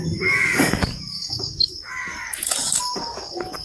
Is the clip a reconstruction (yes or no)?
yes